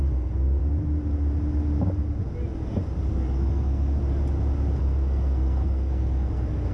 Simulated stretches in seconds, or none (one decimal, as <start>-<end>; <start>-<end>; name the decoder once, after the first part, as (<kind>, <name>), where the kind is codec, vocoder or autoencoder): 0.0-0.6 (codec, SNAC); 3.1-4.0; 4.8-6.7